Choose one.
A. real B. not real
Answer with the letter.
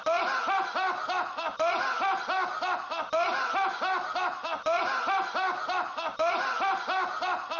A